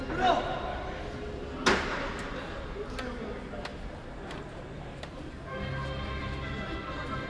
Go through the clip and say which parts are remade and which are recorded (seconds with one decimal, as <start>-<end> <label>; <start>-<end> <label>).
0.0-7.3 recorded